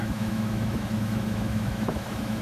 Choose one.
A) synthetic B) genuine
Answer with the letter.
A